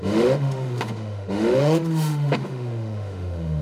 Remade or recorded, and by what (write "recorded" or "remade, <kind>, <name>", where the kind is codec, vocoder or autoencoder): remade, autoencoder, DAC-VAE